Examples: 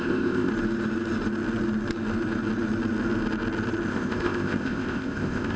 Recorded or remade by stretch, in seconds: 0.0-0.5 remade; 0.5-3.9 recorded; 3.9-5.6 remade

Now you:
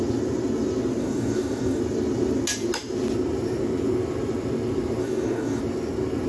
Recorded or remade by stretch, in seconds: 0.0-1.0 recorded; 1.0-1.8 remade; 1.8-5.0 recorded; 5.0-5.6 remade; 5.6-6.3 recorded

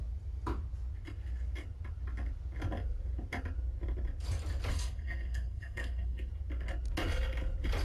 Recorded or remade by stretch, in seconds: 0.0-4.7 recorded; 4.7-6.3 remade; 6.3-7.8 recorded